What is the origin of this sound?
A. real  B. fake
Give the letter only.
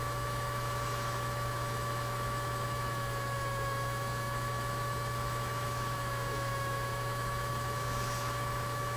B